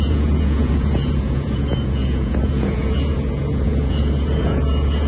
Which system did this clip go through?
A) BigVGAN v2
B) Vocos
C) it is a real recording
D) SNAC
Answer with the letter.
B